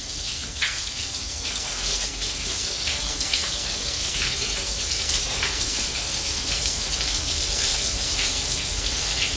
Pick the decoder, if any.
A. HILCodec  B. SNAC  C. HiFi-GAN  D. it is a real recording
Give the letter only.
B